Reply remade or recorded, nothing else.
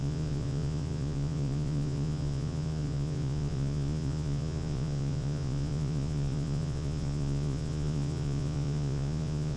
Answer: remade